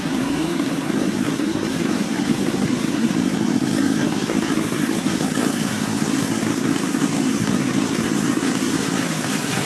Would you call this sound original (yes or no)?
no